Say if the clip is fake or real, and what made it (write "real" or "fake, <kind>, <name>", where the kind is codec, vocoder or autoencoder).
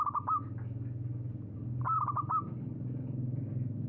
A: real